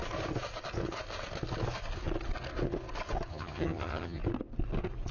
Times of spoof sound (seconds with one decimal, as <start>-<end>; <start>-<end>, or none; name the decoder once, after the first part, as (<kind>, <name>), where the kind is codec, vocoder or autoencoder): 3.3-4.2 (vocoder, HiFi-GAN)